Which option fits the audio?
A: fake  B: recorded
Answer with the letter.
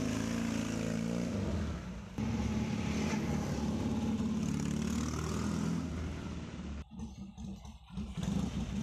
B